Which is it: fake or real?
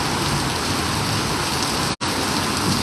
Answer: real